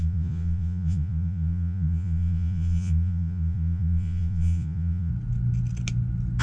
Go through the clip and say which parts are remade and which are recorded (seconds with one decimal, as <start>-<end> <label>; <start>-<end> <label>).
0.0-5.1 remade; 5.1-6.4 recorded